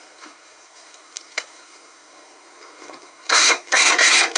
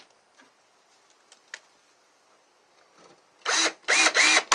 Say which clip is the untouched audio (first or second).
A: second